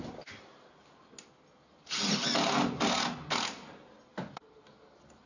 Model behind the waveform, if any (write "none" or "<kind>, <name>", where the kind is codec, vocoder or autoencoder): none